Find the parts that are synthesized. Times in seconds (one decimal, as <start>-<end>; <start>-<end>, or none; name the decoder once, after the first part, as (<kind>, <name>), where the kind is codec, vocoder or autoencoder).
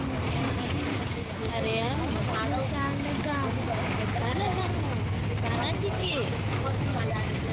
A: 0.9-2.0 (codec, DAC); 2.5-4.6; 6.0-7.0